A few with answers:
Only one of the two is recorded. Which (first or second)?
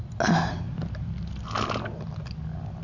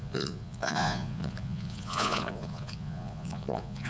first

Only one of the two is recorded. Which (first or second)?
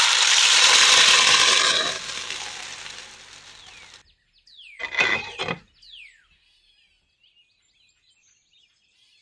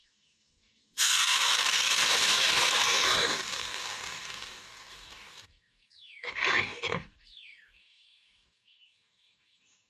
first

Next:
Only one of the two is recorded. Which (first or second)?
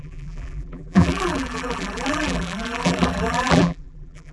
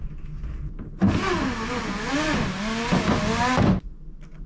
second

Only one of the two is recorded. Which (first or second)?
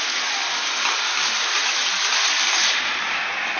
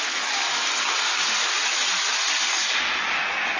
second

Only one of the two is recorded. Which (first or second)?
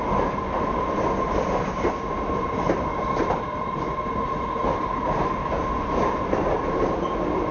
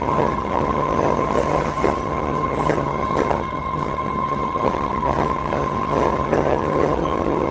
first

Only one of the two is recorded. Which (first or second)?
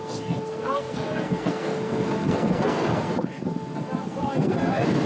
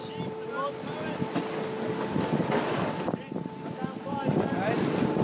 second